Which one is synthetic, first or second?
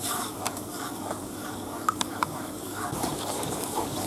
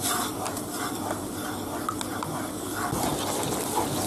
first